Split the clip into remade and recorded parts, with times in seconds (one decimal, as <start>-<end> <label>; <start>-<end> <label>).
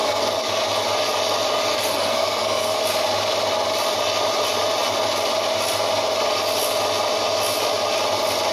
0.0-0.5 remade; 0.5-1.7 recorded; 1.7-2.8 remade; 2.8-8.5 recorded